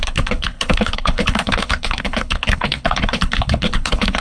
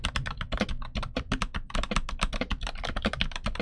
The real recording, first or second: second